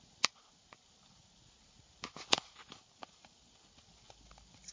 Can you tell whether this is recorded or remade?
recorded